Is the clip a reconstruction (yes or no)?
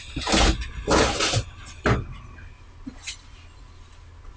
no